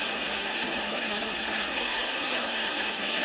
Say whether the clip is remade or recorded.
remade